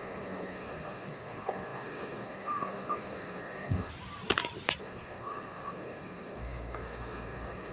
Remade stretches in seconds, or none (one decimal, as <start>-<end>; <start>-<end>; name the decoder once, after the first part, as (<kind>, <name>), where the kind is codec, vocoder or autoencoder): 0.0-3.9 (codec, SNAC); 4.8-7.7